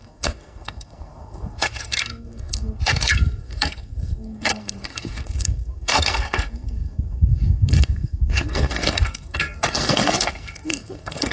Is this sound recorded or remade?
remade